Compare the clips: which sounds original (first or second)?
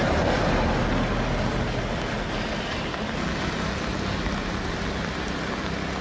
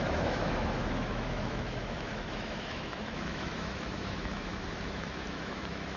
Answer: first